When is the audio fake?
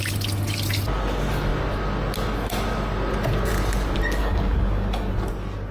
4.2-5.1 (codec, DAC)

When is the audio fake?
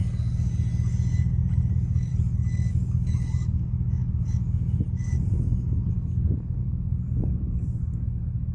1.7-2.1 (codec, DAC); 2.7-4.0; 5.9-6.6; 7.2-8.5